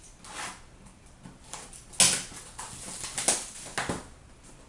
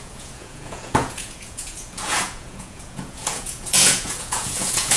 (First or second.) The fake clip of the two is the second